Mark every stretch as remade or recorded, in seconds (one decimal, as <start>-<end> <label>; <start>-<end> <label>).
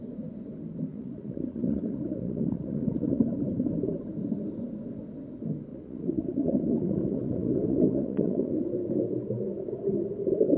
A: 0.0-0.9 recorded; 0.9-3.2 remade; 3.2-5.7 recorded; 5.7-8.6 remade; 8.6-10.6 recorded